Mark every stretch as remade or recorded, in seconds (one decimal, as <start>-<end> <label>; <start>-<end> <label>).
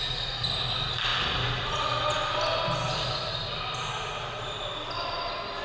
0.0-5.6 recorded